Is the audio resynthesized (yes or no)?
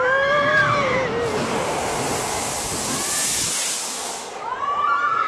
no